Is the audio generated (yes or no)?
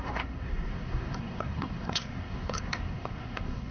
yes